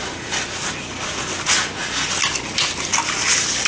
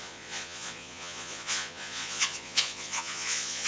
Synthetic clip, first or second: second